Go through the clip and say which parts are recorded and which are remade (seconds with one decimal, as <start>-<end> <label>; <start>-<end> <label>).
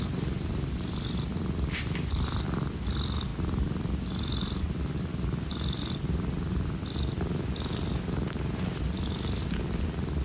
0.0-10.2 recorded